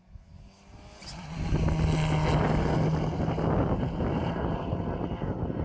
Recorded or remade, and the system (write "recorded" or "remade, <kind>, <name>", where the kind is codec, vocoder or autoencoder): recorded